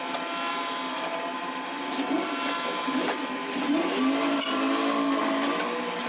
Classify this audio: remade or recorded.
recorded